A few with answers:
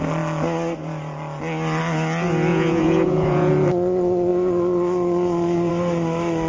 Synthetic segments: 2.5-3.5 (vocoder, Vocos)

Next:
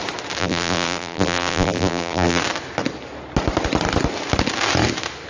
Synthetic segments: 0.4-2.4 (vocoder, BigVGAN v2)

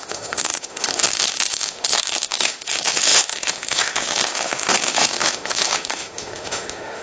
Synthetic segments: 0.0-7.0 (autoencoder, DAC-VAE)

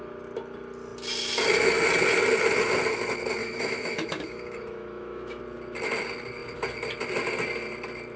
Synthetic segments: 3.4-5.4 (autoencoder, DAC-VAE)

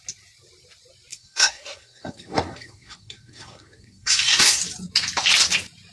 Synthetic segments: 1.1-4.6 (codec, SNAC)

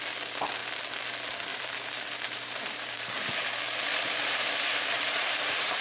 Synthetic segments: 1.5-3.3 (vocoder, BigVGAN v2); 3.9-5.8

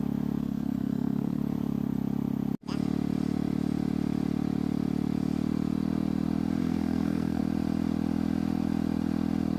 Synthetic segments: 0.4-1.4 (codec, SNAC); 6.6-7.4

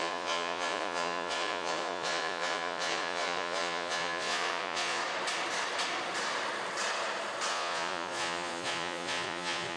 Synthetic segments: 0.0-5.0 (vocoder, Vocos); 7.5-9.8